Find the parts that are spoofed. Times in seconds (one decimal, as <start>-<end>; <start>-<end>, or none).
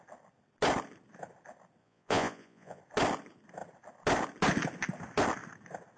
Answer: 1.8-2.8